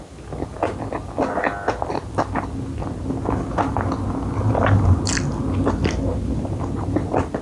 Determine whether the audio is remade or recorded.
recorded